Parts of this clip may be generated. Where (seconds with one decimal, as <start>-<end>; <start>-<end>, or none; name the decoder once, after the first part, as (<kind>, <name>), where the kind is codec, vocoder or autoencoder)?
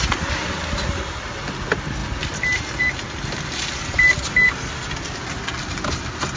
none